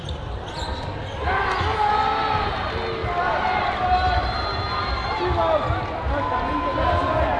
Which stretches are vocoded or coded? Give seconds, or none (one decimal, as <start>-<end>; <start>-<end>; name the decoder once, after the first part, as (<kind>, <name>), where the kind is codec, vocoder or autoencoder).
none